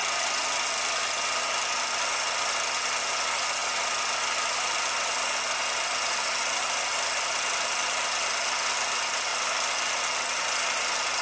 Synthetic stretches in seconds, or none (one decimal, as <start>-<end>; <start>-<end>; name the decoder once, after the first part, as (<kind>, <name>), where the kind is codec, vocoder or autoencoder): none

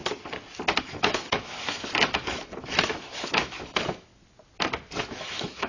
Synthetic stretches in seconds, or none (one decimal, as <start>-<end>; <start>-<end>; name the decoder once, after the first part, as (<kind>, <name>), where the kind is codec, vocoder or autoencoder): 0.8-4.1 (autoencoder, DAC-VAE); 5.0-5.7